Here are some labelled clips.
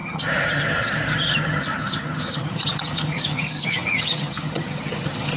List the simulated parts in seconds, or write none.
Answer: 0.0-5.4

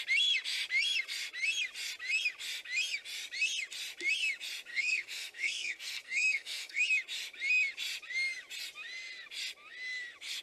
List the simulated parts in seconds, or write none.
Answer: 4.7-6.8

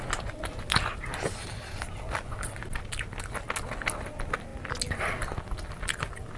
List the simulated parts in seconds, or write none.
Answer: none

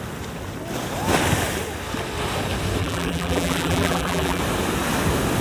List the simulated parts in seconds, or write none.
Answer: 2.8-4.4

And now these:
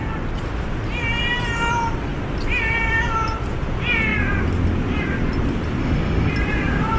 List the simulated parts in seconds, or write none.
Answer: 5.8-6.3